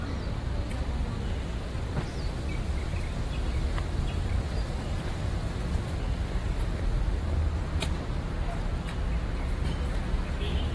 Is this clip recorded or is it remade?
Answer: recorded